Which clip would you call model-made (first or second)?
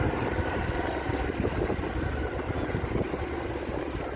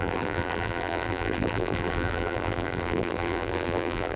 second